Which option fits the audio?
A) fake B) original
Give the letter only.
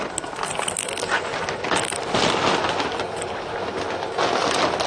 B